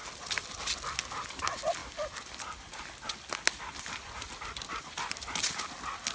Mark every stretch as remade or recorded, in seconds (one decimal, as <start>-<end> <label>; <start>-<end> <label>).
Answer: 0.0-6.1 recorded

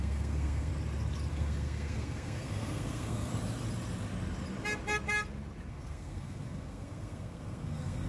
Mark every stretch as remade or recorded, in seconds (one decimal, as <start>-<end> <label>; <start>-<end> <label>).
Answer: 0.0-0.7 remade; 0.7-1.3 recorded; 1.3-3.3 remade; 3.3-5.7 recorded; 5.7-8.1 remade

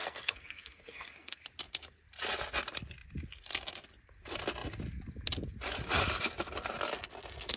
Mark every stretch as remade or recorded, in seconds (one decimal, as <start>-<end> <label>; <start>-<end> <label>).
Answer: 0.0-1.4 remade; 1.4-7.6 recorded

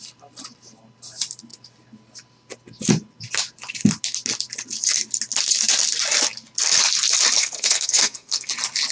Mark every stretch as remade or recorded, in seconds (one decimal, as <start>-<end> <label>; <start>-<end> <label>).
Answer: 0.0-7.4 recorded; 7.4-8.5 remade; 8.5-8.9 recorded

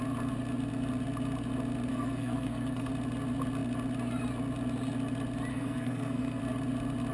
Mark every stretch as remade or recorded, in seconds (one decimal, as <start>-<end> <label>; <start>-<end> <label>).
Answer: 0.0-1.9 recorded; 1.9-2.9 remade; 2.9-5.5 recorded; 5.5-6.4 remade; 6.4-7.1 recorded

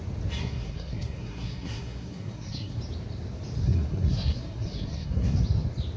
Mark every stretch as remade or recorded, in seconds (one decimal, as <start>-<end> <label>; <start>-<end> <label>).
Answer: 0.0-0.4 recorded; 0.4-2.8 remade; 2.8-3.6 recorded; 3.6-5.4 remade; 5.4-6.0 recorded

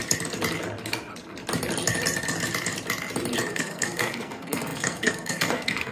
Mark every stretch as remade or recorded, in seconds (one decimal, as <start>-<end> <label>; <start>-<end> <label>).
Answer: 0.0-3.5 recorded; 3.5-5.9 remade